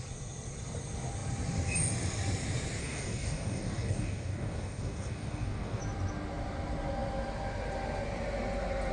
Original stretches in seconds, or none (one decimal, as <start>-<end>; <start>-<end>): 0.0-2.8; 5.8-8.9